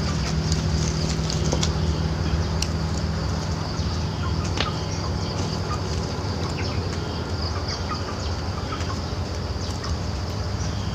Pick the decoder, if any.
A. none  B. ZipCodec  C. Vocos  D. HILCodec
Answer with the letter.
A